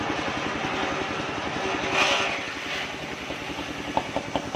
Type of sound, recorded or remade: recorded